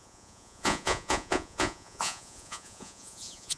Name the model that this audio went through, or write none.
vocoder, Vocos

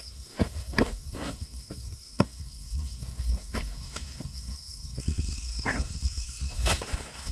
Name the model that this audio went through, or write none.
codec, SNAC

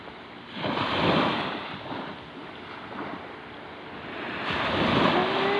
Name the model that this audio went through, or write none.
none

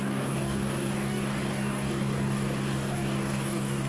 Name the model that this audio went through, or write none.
codec, DAC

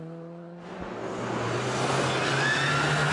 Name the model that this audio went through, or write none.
none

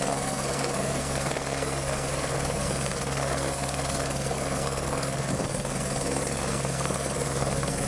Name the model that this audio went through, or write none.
codec, SNAC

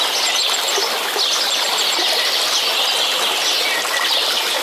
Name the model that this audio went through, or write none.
none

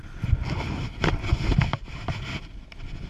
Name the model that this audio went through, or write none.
none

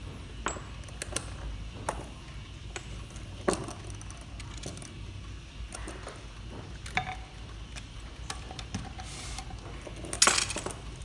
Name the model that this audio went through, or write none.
none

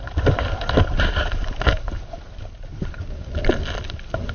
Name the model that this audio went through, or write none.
none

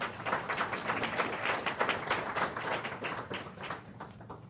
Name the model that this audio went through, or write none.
none